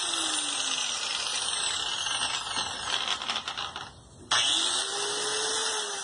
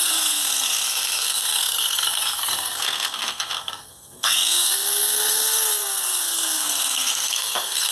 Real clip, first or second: first